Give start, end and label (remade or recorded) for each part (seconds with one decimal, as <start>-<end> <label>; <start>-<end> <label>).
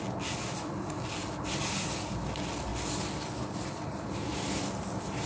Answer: 0.0-5.3 recorded